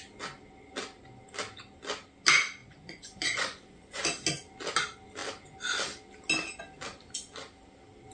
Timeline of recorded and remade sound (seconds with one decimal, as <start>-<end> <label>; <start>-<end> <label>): 0.0-2.6 recorded; 2.6-4.0 remade; 4.0-8.1 recorded